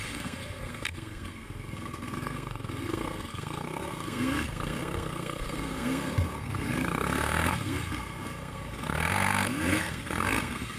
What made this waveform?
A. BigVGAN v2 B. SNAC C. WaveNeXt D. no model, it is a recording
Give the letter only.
B